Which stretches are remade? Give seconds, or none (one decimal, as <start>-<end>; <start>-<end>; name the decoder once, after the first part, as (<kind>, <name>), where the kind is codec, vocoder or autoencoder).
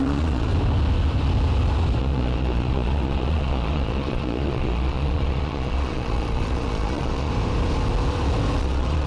0.0-0.5 (vocoder, Vocos); 2.0-7.3; 8.6-9.1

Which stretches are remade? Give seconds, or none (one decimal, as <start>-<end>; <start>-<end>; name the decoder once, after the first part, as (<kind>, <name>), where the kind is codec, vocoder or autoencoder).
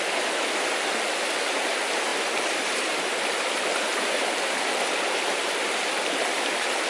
3.9-4.7 (vocoder, BigVGAN v2)